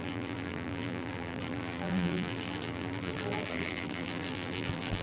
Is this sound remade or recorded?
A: remade